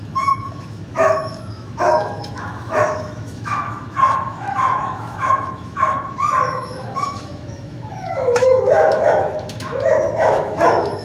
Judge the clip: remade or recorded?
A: remade